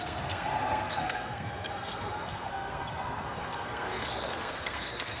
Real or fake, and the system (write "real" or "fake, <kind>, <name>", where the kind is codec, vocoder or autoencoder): fake, codec, SNAC